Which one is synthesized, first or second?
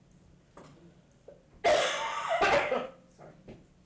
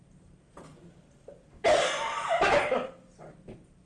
second